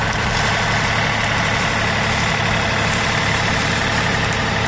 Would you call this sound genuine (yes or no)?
yes